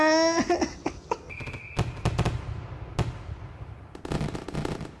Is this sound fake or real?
real